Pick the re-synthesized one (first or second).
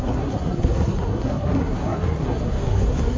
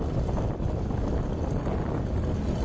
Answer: first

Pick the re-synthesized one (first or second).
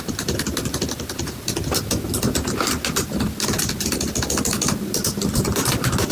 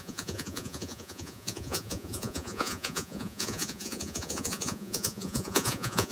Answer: second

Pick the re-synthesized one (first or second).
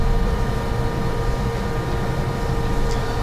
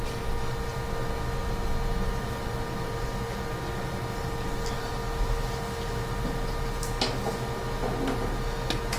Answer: first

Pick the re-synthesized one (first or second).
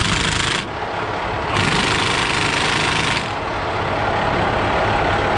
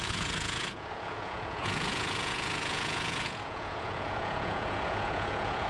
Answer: second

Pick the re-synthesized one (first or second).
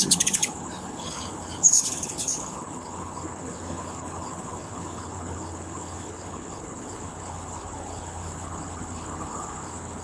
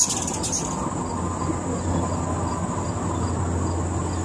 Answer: first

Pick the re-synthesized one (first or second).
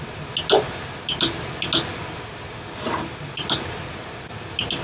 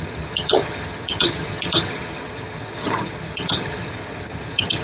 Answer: second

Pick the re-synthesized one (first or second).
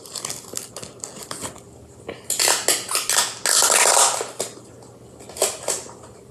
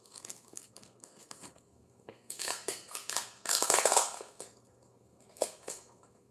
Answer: second